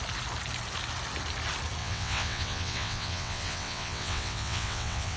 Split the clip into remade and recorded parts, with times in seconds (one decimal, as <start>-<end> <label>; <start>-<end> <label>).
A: 0.0-1.8 recorded; 1.8-5.2 remade